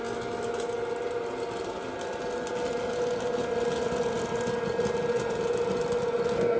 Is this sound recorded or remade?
recorded